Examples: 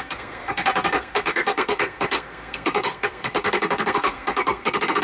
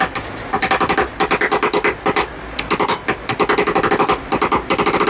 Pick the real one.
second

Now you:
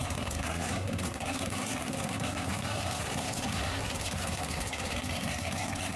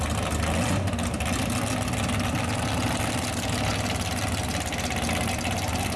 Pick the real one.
second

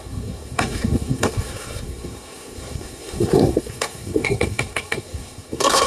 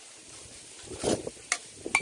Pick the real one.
second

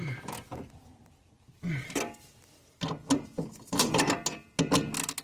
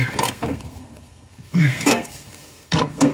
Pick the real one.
first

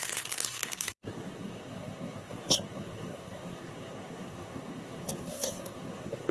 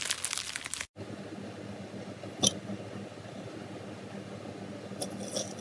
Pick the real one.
second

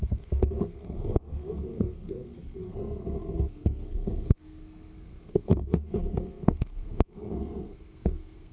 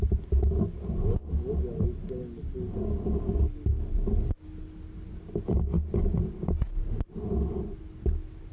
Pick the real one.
second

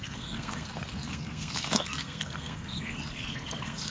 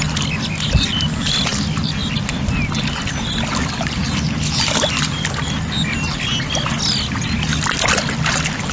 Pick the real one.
second